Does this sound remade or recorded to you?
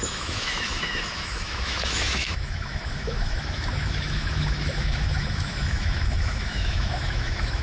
remade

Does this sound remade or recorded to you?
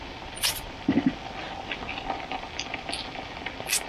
recorded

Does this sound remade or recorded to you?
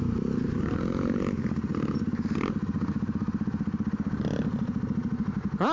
recorded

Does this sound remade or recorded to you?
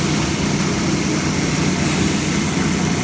recorded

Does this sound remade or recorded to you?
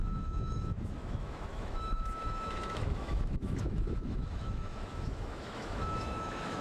remade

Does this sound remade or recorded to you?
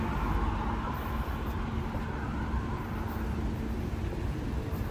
recorded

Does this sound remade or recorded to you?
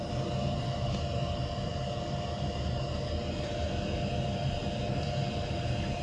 recorded